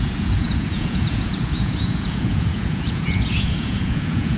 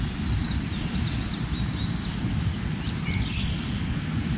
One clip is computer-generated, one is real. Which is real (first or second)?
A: second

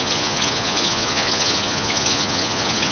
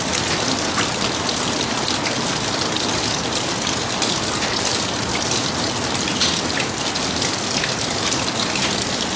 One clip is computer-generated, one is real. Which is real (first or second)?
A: second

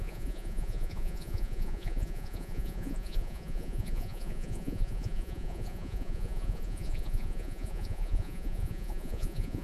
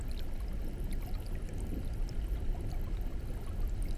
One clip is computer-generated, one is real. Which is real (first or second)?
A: second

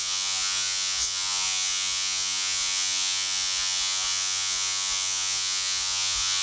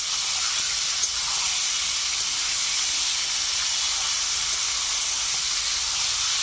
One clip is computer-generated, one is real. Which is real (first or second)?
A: second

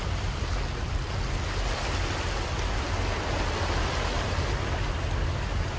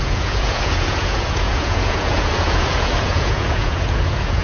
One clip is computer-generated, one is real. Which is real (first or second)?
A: first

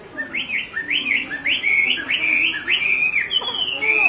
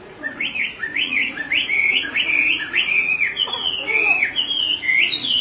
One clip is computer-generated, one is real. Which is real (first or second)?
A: first